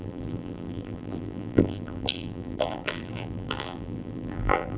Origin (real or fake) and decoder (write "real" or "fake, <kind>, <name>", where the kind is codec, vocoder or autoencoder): fake, vocoder, BigVGAN v2